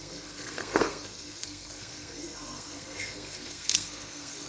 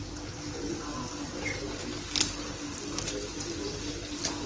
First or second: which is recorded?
second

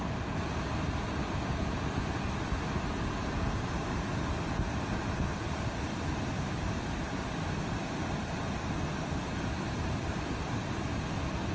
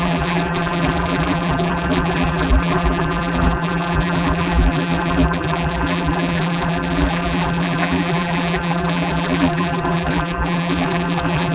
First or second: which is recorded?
first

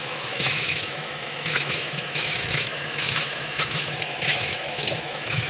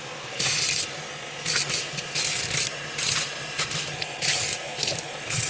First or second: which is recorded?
second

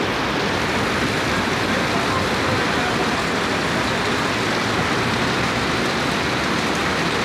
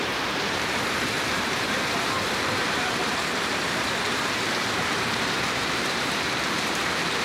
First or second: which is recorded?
first